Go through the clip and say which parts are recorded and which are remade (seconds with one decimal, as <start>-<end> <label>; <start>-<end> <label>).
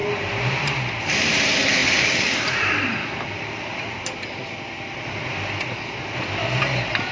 0.0-7.1 recorded